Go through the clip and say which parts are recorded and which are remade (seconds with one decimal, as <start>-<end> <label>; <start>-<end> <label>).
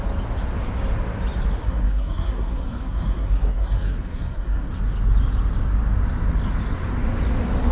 0.0-1.6 recorded; 1.6-4.7 remade; 4.7-7.7 recorded